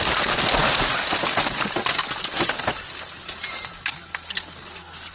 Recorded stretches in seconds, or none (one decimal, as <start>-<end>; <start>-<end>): 0.0-5.1